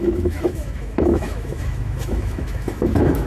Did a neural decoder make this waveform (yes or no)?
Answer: yes